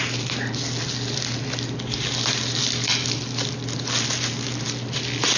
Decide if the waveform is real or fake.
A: real